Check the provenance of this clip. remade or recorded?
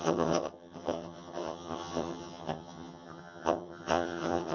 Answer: remade